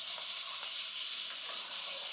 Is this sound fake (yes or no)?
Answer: yes